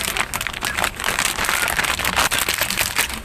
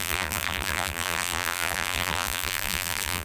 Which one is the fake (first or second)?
second